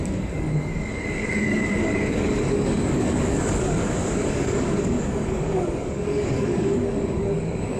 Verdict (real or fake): fake